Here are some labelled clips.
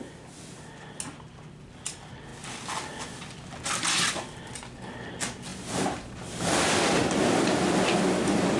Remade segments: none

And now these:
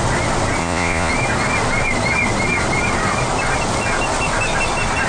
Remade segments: 0.6-1.1

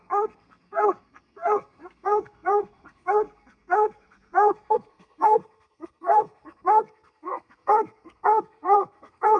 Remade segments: 0.0-9.4